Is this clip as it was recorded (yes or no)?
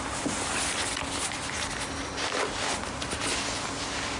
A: yes